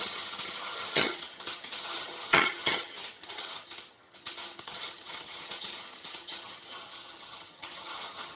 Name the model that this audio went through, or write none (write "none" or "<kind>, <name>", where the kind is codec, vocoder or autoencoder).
vocoder, HiFi-GAN